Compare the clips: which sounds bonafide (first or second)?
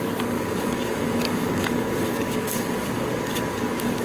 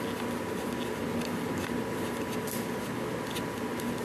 second